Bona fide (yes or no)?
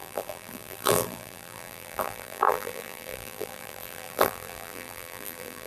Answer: no